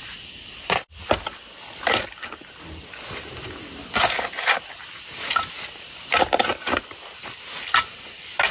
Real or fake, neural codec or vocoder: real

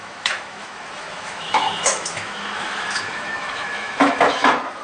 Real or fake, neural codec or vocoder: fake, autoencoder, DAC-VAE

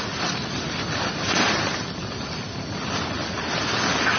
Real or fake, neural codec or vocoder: real